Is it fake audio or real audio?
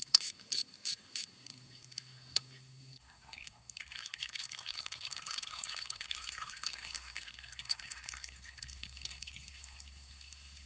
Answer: fake